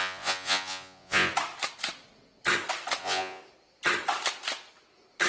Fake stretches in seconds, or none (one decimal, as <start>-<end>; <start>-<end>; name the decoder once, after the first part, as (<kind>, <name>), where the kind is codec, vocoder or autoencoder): 0.0-1.3 (vocoder, Vocos); 3.0-3.4